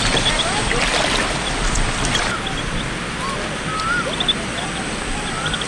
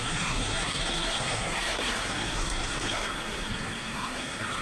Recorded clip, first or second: first